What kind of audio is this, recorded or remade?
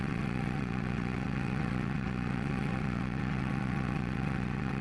remade